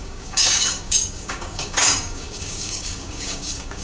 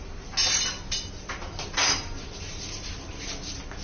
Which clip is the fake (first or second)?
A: first